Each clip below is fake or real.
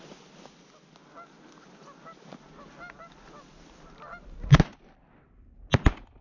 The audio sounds real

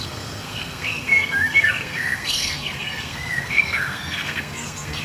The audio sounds fake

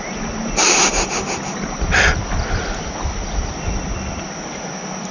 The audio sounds real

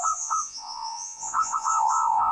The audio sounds fake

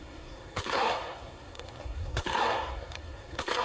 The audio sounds fake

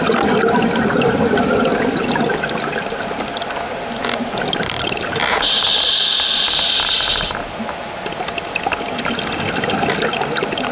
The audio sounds real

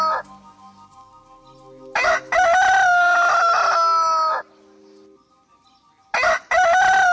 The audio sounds real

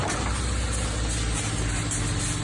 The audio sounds real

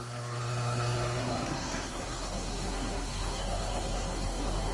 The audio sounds fake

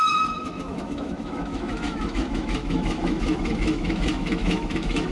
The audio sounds fake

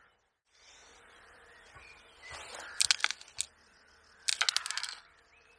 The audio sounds real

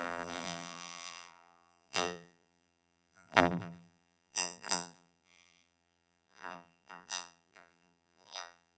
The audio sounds fake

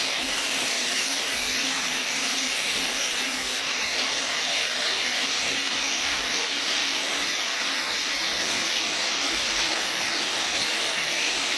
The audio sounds fake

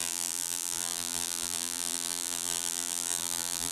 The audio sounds fake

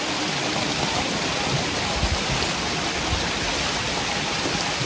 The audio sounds real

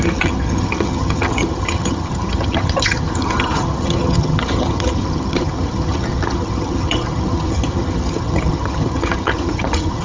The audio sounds fake